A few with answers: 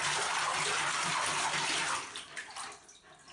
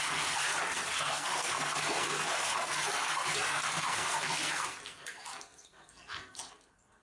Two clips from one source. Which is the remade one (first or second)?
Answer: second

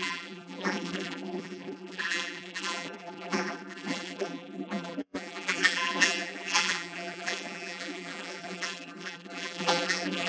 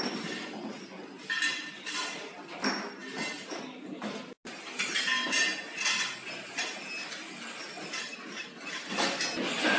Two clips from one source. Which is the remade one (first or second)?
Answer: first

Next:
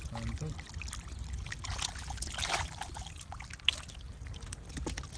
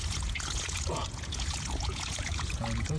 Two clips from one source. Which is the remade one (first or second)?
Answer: second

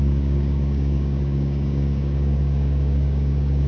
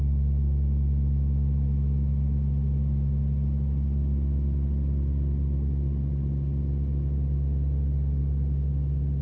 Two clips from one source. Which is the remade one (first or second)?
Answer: first